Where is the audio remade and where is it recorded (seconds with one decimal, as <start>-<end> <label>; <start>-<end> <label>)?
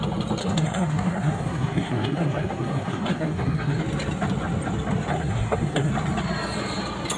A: 0.0-0.4 recorded; 0.4-3.8 remade; 3.8-5.1 recorded; 5.1-5.9 remade; 5.9-7.2 recorded